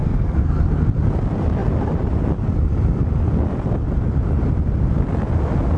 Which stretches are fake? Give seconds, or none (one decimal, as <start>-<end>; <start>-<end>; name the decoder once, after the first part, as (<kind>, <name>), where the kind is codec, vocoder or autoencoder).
0.0-0.6 (codec, SNAC)